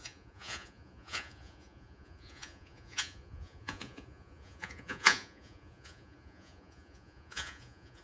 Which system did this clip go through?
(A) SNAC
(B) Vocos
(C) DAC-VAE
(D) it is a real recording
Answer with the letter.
B